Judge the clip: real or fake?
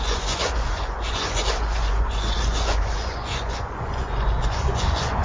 fake